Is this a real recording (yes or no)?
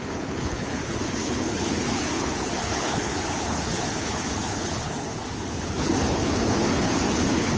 no